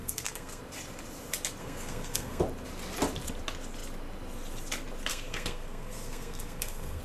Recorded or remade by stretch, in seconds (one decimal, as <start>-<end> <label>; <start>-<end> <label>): 0.0-0.6 remade; 0.6-1.6 recorded; 1.6-2.4 remade; 2.4-5.1 recorded; 5.1-7.0 remade